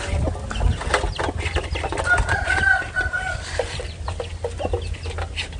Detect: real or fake real